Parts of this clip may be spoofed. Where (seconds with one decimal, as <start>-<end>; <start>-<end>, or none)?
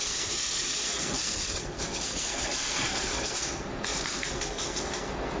0.0-5.4